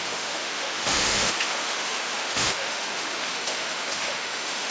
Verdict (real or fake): fake